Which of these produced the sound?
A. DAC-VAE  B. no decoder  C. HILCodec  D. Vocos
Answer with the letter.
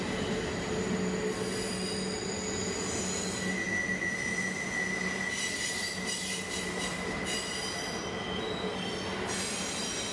B